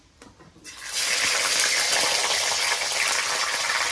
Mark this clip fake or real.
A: real